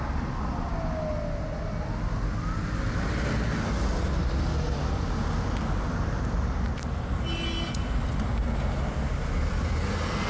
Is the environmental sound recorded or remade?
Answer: recorded